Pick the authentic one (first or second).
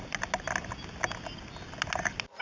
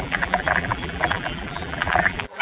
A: first